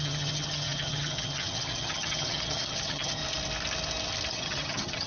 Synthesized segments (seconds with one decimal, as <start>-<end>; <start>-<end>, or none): 0.0-3.2; 4.3-5.1